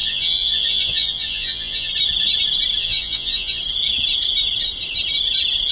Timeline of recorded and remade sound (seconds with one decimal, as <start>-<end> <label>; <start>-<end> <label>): 0.0-1.9 remade; 1.9-2.8 recorded; 2.8-3.6 remade; 3.6-5.7 recorded